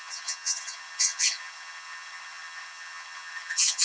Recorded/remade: remade